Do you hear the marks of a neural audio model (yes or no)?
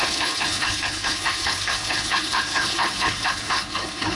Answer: yes